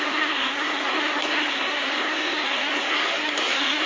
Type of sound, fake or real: fake